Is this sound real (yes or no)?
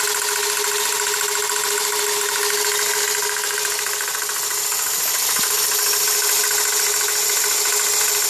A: yes